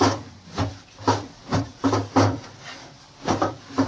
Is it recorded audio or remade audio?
remade